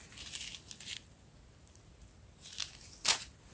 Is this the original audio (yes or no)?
yes